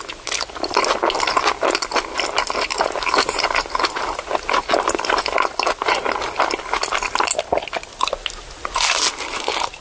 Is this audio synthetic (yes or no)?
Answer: no